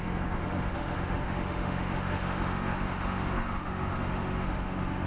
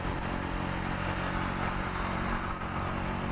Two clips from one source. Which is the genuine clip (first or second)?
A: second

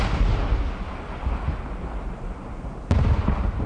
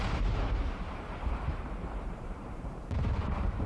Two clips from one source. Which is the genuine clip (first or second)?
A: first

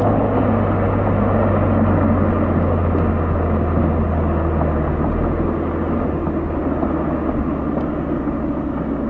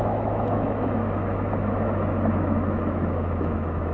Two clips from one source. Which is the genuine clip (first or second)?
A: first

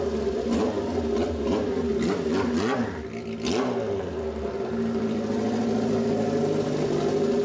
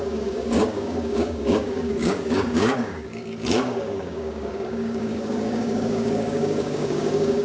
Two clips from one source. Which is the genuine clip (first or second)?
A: first